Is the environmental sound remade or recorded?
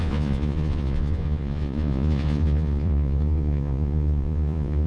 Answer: remade